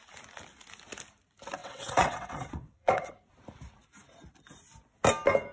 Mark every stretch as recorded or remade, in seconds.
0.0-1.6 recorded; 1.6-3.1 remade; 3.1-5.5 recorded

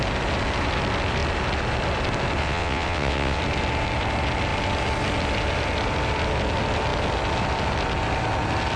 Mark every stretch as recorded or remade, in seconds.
0.0-2.4 recorded; 2.4-3.4 remade; 3.4-8.8 recorded

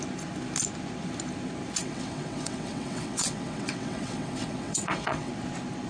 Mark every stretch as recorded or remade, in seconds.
0.0-1.8 recorded; 1.8-5.3 remade; 5.3-5.9 recorded

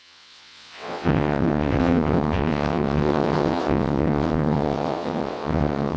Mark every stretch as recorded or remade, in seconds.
0.0-6.0 remade

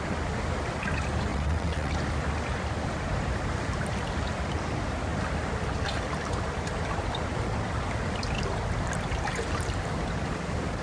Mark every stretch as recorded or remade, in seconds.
0.0-1.3 recorded; 1.3-1.9 remade; 1.9-10.8 recorded

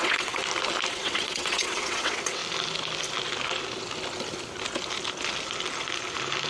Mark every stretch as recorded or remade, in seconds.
0.0-0.4 remade; 0.4-0.9 recorded; 0.9-2.4 remade; 2.4-6.5 recorded